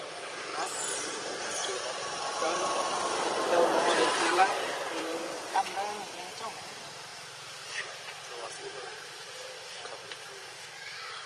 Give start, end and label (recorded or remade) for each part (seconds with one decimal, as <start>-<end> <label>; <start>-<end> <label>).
0.0-0.5 remade; 0.5-1.4 recorded; 1.4-11.3 remade